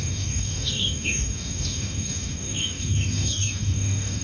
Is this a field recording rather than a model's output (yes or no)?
no